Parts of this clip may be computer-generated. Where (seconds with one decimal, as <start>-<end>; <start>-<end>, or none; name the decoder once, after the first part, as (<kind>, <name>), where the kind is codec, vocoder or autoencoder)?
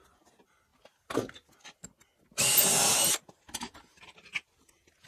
none